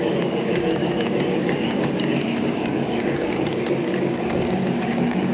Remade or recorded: remade